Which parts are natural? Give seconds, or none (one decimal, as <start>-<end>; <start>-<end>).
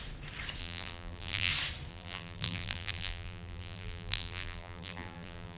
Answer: 0.0-0.6; 1.5-1.9